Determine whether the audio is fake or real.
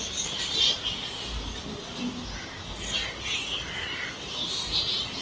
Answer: real